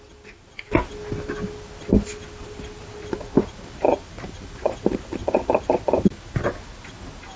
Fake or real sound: real